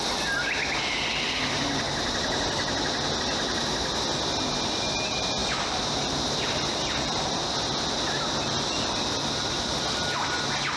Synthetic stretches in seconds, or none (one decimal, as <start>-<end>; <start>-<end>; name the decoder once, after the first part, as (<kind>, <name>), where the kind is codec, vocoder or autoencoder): none